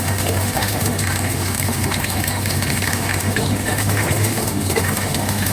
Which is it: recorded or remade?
remade